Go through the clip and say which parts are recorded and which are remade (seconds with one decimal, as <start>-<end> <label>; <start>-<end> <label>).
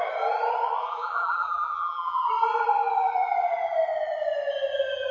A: 0.0-0.8 recorded; 0.8-2.3 remade; 2.3-5.1 recorded